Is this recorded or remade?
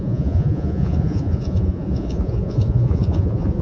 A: remade